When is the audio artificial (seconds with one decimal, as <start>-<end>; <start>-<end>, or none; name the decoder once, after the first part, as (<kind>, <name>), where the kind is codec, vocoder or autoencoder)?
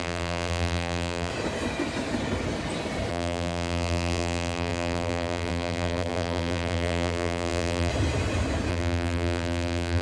0.0-1.3 (vocoder, BigVGAN v2); 3.1-7.9; 8.7-10.0